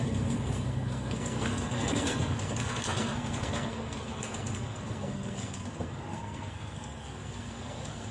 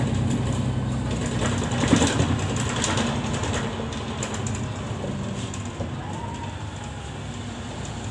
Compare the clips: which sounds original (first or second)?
second